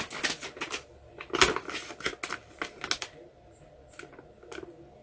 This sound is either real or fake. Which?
real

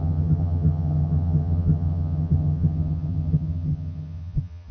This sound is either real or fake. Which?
fake